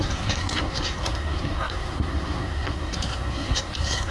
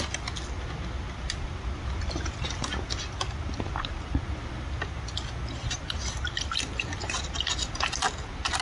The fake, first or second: first